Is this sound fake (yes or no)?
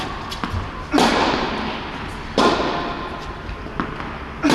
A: no